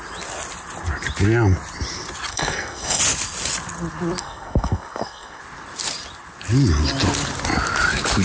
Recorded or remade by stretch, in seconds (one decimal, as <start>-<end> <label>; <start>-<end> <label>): 0.0-2.3 recorded; 2.3-3.0 remade; 3.0-4.2 recorded; 4.2-5.4 remade; 5.4-8.2 recorded